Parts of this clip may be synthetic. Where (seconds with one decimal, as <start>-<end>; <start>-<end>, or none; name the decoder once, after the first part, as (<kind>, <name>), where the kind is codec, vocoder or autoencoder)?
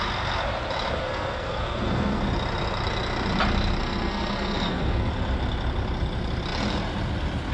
1.0-2.2 (codec, SNAC); 3.8-5.1